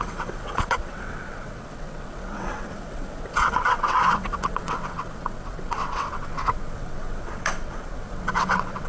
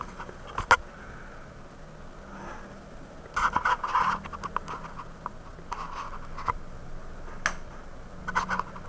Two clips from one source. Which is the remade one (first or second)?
first